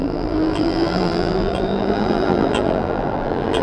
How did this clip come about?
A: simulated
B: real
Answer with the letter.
A